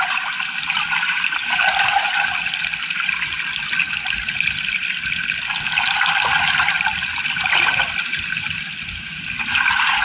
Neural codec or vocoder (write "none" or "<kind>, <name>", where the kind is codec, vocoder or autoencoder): none